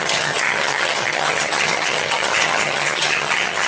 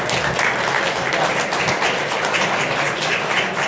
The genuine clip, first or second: second